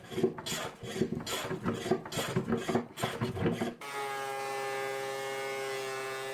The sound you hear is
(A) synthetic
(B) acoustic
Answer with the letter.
B